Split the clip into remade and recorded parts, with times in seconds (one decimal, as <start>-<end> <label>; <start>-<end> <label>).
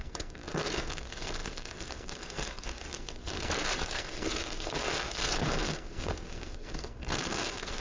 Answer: 0.0-7.8 remade